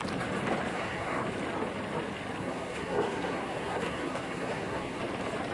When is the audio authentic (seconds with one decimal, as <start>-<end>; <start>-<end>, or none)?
0.0-0.7; 1.2-2.4; 5.0-5.5